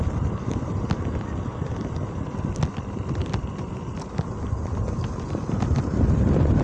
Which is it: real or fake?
real